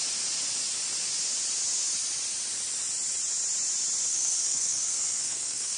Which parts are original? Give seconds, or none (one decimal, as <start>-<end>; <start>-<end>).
0.0-4.1